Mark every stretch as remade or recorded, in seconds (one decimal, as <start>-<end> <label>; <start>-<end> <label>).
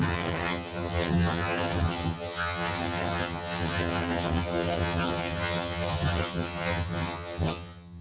0.0-8.0 remade